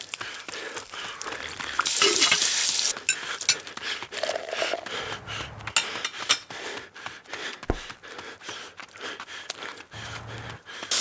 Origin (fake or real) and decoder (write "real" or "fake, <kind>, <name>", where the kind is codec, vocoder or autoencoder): real